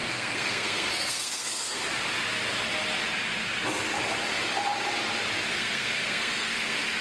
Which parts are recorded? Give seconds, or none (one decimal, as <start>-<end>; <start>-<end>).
1.8-5.5